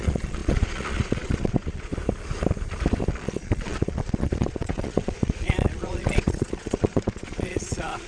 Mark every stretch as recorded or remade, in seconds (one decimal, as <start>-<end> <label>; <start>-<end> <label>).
0.0-1.9 remade; 1.9-3.1 recorded; 3.1-8.1 remade